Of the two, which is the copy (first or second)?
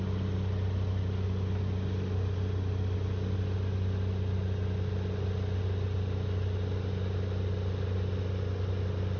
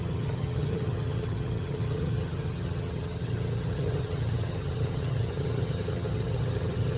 second